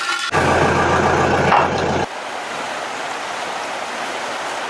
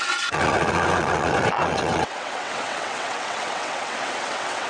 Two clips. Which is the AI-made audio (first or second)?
second